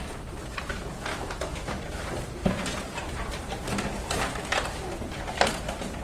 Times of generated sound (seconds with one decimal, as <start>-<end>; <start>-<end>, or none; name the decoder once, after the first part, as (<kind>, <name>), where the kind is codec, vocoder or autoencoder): 1.1-1.8 (autoencoder, DAC-VAE)